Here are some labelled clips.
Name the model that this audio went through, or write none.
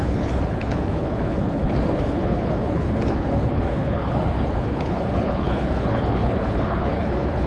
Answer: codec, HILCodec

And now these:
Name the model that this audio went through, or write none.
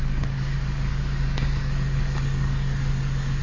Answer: codec, DAC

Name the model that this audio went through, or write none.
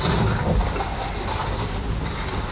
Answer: none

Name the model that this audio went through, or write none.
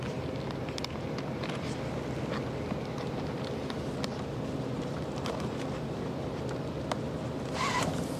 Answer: none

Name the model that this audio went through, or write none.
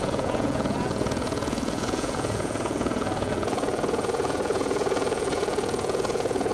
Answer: vocoder, Vocos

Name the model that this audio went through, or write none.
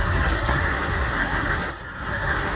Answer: codec, SNAC